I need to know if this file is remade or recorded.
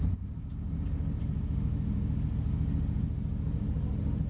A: recorded